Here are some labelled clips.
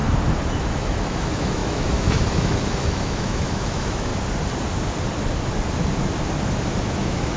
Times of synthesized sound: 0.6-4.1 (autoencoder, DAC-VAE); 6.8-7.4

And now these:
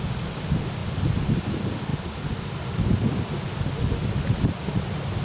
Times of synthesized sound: none

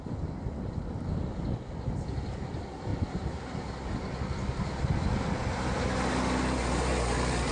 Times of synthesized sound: none

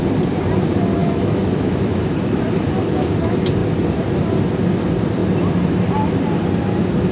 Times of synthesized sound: 1.0-2.0 (autoencoder, DAC-VAE)

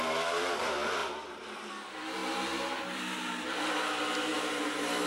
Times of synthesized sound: none

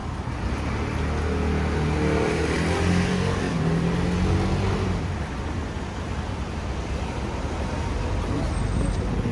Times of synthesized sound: none

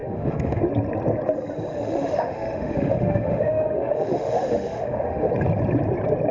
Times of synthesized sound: 0.0-0.6 (autoencoder, DAC-VAE); 1.7-5.3

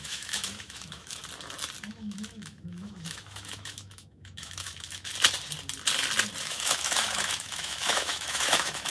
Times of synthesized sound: 0.0-1.2 (autoencoder, DAC-VAE); 1.9-5.1; 6.4-8.9